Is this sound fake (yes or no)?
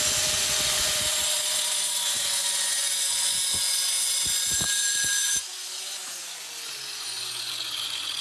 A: yes